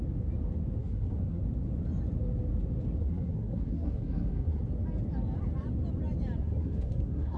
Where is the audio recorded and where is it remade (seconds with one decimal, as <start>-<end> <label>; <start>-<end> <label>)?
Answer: 0.0-0.8 recorded; 0.8-1.4 remade; 1.4-3.0 recorded; 3.0-4.6 remade; 4.6-6.4 recorded; 6.4-7.4 remade